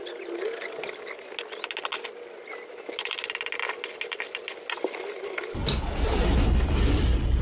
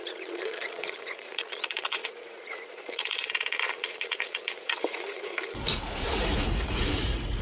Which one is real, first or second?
first